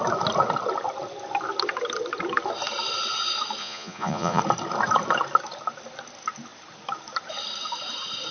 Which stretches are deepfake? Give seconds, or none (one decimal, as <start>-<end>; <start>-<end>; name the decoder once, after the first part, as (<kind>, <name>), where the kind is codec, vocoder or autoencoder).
3.6-4.4 (vocoder, Vocos)